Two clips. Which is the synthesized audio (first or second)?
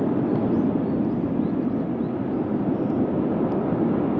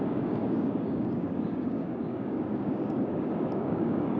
second